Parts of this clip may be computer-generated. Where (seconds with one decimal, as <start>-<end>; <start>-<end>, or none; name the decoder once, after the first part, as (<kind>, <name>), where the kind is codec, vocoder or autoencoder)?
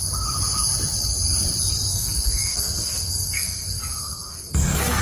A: 1.9-5.0 (codec, SNAC)